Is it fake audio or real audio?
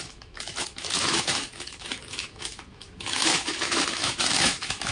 fake